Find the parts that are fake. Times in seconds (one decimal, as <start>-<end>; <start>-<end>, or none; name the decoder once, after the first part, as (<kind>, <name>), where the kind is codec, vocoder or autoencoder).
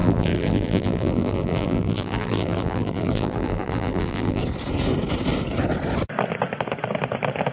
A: 0.0-4.4 (vocoder, BigVGAN v2)